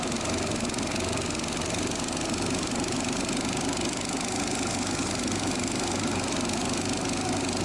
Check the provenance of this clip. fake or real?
real